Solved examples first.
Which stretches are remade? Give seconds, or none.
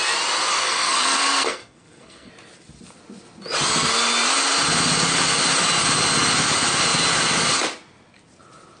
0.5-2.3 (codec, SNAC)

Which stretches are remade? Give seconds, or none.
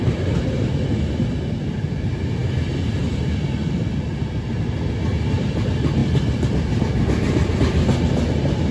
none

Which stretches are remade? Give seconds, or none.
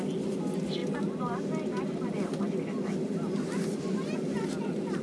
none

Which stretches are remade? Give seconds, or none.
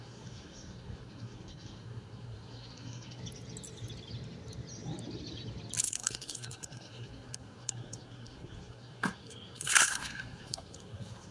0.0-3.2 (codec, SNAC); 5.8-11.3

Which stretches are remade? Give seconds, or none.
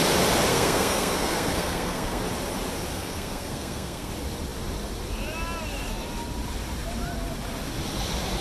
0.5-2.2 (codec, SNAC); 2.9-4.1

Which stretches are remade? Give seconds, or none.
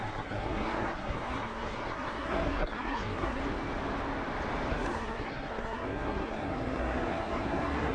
0.0-3.4 (codec, SNAC); 4.7-7.9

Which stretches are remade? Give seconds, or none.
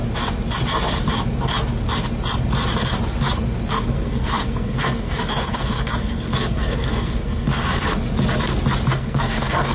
3.7-7.8 (codec, SNAC); 8.9-9.7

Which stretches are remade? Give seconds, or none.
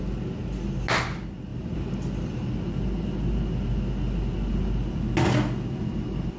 none